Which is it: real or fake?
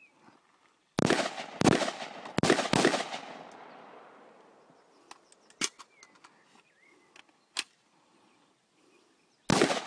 real